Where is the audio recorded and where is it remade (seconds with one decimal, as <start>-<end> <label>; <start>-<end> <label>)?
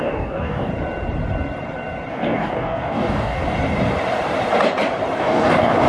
0.0-0.7 remade; 0.7-2.1 recorded; 2.1-3.4 remade; 3.4-5.2 recorded; 5.2-5.9 remade